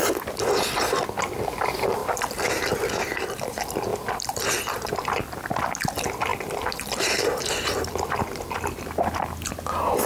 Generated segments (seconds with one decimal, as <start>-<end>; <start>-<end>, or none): 2.0-2.6; 3.9-5.5; 6.3-8.2